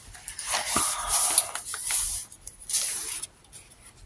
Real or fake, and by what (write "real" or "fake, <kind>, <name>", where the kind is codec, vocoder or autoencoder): real